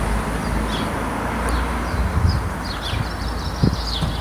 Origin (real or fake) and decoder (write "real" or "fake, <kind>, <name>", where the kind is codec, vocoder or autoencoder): real